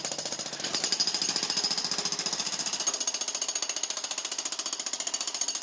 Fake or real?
real